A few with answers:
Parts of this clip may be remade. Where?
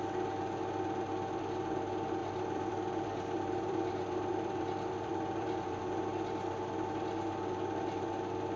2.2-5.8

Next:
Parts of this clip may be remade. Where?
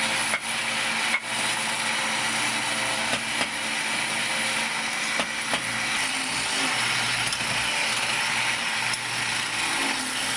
none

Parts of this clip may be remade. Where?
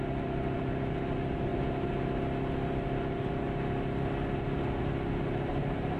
none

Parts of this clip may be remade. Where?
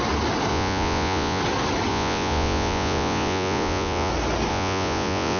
0.5-1.4; 1.9-4.1; 4.5-5.4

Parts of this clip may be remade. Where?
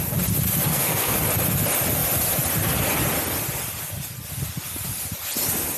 0.7-1.2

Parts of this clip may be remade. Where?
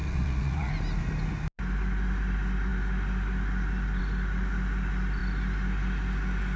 0.0-0.7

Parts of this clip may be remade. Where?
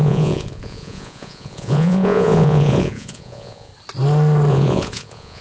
0.0-3.7; 4.5-5.4